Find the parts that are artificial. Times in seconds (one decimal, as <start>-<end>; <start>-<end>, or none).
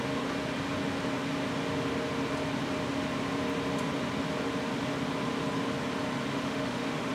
6.3-7.1